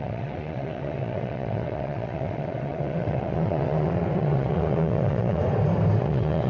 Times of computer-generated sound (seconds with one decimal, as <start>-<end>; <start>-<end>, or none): 0.0-5.4; 6.0-6.5